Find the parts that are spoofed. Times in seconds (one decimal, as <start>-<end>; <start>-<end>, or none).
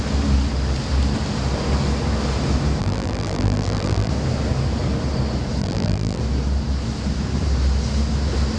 2.8-4.1; 5.6-6.2